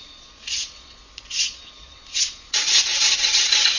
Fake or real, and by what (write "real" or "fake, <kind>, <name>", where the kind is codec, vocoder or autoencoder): fake, vocoder, Vocos